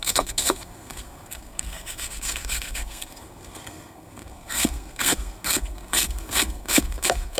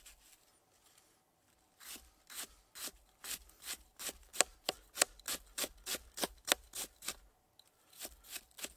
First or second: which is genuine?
second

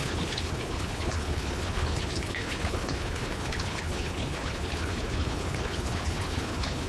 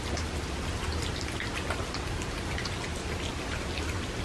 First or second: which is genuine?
second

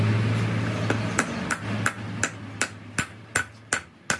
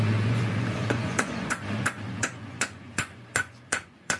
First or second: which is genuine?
first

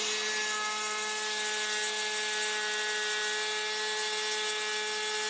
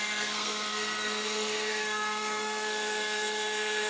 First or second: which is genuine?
first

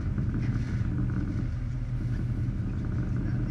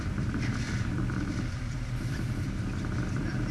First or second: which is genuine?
first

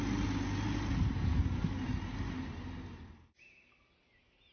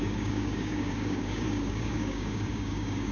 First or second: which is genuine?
first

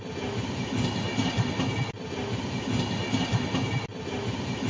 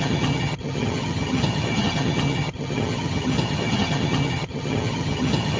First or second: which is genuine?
first